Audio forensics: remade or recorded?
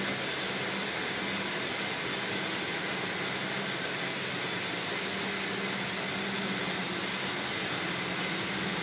recorded